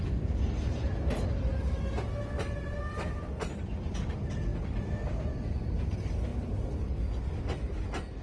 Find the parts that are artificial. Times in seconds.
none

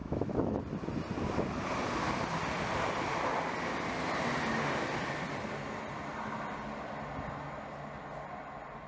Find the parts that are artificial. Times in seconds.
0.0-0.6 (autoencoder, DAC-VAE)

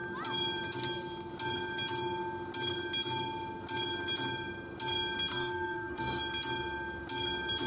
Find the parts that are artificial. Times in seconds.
5.3-6.2 (codec, SNAC)

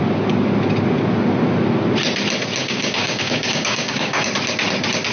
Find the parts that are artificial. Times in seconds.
2.6-4.3 (codec, DAC)

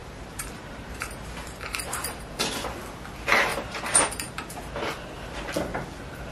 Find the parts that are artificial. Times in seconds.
0.0-1.8 (vocoder, BigVGAN v2); 3.5-5.0

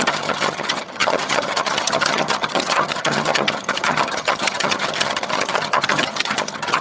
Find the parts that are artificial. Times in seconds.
0.0-6.8 (vocoder, HiFi-GAN)